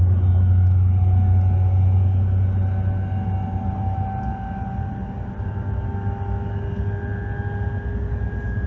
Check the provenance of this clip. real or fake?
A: real